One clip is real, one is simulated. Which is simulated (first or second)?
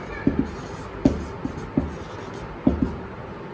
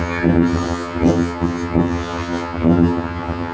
second